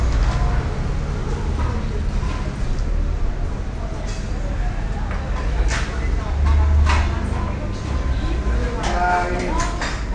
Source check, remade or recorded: recorded